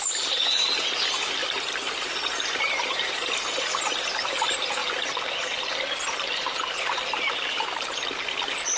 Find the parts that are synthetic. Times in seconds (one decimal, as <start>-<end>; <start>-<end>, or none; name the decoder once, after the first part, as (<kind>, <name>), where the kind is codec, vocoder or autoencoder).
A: none